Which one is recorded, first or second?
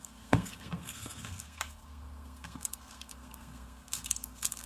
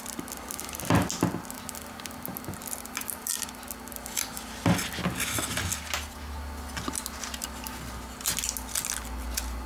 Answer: second